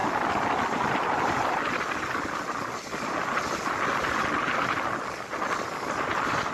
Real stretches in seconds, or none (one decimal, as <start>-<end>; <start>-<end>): 0.0-6.5

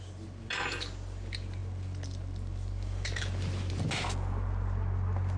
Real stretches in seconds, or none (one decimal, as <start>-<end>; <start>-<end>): 0.0-5.4

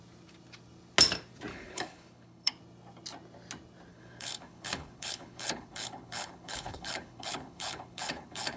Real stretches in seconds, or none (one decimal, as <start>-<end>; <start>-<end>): 0.0-1.5; 2.5-3.9

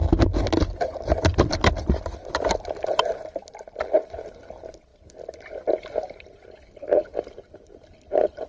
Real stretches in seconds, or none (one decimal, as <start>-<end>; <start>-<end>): 0.0-8.5

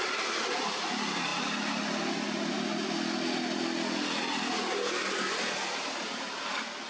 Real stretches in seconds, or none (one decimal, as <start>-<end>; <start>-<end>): 0.0-6.9

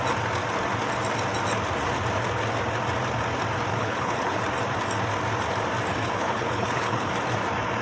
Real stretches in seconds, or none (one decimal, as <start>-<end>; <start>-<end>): 0.0-3.7; 4.4-5.9; 7.1-7.8